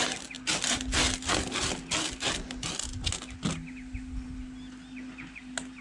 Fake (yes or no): no